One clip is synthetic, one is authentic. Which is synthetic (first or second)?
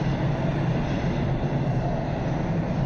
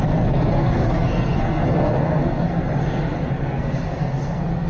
second